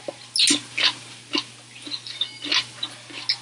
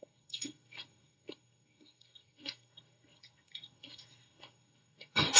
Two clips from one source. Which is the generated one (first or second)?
second